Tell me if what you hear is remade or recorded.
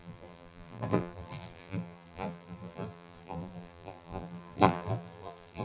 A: remade